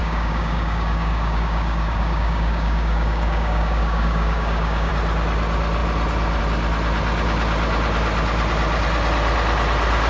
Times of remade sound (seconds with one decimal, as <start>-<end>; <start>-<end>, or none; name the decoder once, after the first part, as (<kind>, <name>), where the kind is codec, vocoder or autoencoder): 0.0-4.9 (codec, DAC)